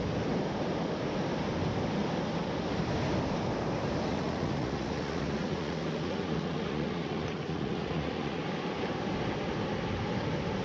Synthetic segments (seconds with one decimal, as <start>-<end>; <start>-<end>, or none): 4.1-8.4

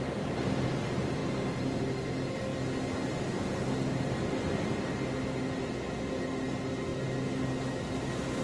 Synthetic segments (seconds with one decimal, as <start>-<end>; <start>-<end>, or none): none

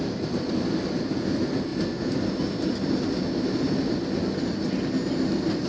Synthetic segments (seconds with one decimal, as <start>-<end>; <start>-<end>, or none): none

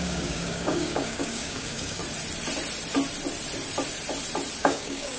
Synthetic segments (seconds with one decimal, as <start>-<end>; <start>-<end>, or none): 0.0-2.0; 4.6-5.2

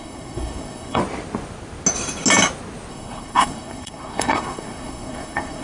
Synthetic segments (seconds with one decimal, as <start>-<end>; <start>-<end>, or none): 0.0-1.0; 2.9-5.6